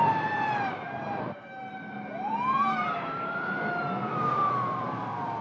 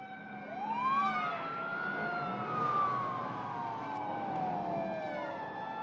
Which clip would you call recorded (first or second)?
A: second